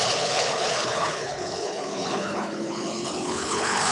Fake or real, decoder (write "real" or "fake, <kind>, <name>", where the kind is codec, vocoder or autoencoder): fake, codec, HILCodec